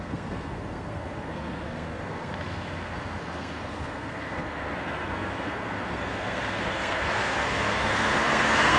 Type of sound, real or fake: fake